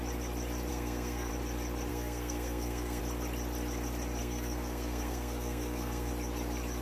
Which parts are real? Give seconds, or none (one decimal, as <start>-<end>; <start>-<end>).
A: 0.0-0.7; 1.3-1.9; 3.0-4.2; 6.1-6.8